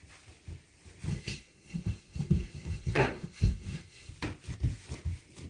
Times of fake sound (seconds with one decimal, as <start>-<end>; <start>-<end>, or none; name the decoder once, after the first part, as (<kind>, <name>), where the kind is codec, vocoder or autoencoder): 1.1-4.1 (codec, SNAC)